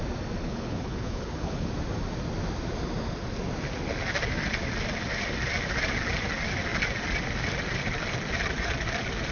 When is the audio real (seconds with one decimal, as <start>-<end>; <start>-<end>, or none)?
0.0-0.4; 1.7-9.3